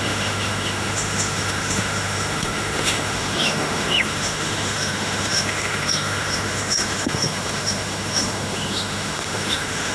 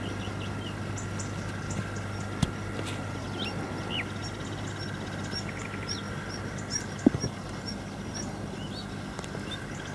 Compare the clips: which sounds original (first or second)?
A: second